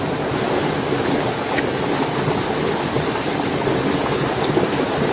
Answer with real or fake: real